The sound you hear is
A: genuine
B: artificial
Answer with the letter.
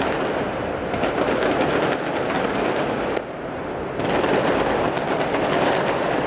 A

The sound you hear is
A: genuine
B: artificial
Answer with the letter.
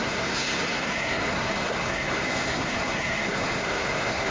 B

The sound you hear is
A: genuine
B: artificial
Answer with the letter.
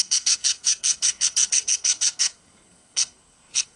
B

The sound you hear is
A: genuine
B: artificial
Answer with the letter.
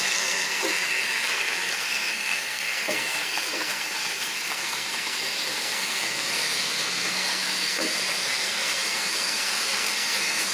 B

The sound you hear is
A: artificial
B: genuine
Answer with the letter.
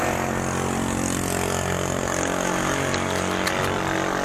B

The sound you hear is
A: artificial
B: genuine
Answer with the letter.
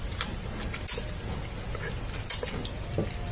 B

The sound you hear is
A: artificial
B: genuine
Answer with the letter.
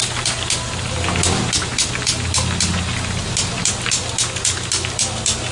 B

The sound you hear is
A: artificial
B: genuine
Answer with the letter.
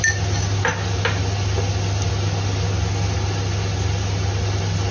B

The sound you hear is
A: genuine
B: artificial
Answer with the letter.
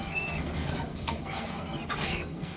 B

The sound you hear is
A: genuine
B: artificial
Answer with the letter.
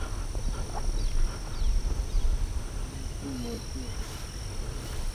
A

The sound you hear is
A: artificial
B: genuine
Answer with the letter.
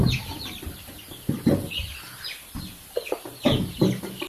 B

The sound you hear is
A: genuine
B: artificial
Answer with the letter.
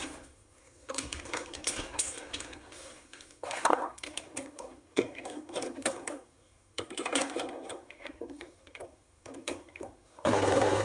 B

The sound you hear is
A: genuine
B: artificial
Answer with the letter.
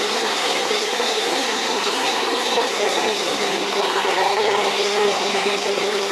B